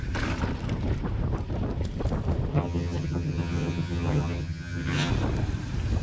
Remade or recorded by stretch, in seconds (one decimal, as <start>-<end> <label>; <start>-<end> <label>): 0.0-2.5 recorded; 2.5-5.1 remade; 5.1-6.0 recorded